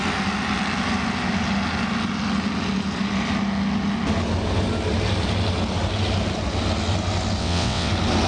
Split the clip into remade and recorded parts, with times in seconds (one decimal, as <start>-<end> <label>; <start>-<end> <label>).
0.0-7.4 recorded; 7.4-7.9 remade; 7.9-8.3 recorded